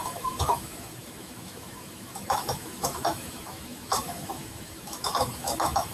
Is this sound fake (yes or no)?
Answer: yes